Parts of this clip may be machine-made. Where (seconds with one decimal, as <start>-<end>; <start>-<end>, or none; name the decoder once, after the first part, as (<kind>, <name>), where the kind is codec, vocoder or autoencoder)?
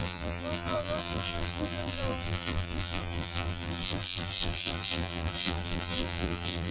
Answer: 0.0-6.7 (vocoder, BigVGAN v2)